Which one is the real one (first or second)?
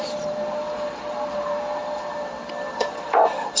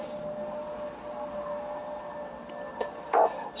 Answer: second